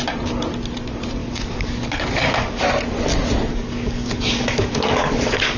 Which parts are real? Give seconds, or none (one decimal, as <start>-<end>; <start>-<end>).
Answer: 0.0-1.2; 2.6-3.5